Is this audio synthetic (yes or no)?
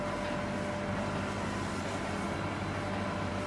no